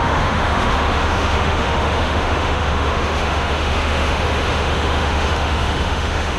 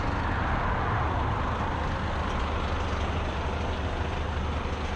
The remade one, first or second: first